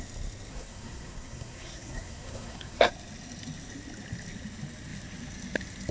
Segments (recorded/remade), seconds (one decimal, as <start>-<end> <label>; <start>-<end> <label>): 0.0-0.5 recorded; 0.5-2.9 remade; 2.9-5.9 recorded